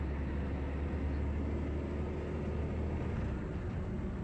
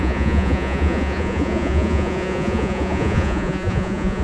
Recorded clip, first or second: first